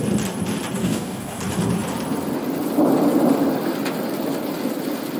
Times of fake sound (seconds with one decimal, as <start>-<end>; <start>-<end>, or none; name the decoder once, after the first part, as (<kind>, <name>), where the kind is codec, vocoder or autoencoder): 0.8-1.4 (codec, DAC)